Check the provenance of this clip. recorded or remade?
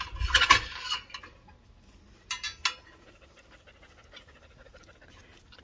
recorded